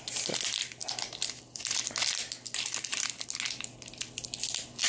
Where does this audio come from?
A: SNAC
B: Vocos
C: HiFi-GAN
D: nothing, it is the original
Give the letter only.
D